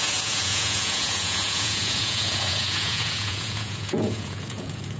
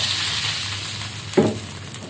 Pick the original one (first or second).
second